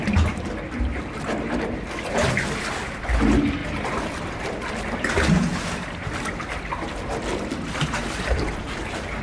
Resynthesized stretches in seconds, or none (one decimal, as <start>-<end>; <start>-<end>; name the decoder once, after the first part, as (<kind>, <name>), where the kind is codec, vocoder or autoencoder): none